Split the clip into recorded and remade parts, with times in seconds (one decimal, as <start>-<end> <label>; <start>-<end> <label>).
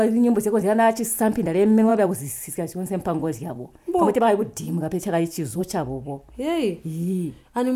0.0-1.9 recorded; 1.9-5.6 remade; 5.6-7.8 recorded